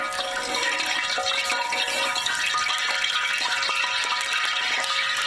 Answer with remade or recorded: recorded